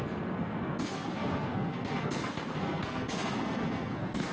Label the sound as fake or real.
fake